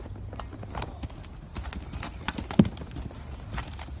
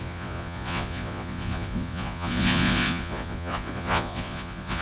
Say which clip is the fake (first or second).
second